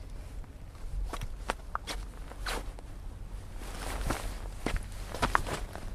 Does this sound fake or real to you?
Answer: real